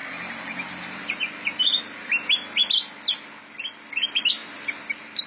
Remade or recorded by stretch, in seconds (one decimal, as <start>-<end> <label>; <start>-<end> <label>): 0.0-2.1 remade; 2.1-4.4 recorded; 4.4-5.3 remade